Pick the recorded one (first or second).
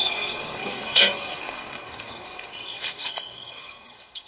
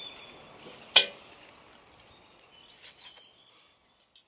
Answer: second